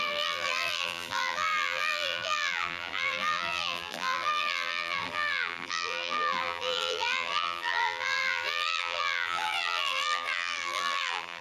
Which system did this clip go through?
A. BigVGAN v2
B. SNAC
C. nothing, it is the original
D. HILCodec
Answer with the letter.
A